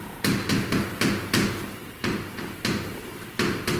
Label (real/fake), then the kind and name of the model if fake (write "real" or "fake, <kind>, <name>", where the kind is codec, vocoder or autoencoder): real